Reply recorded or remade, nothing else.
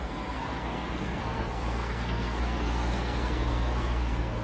remade